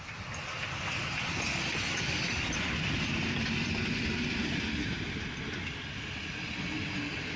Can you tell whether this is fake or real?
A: real